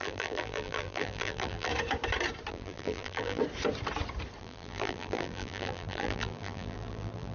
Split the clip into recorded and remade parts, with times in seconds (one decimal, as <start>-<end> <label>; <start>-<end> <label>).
0.0-1.7 remade; 1.7-2.5 recorded; 2.5-3.4 remade; 3.4-4.4 recorded; 4.4-7.3 remade